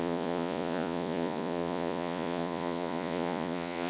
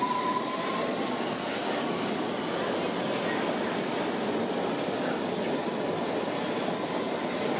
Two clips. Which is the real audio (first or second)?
second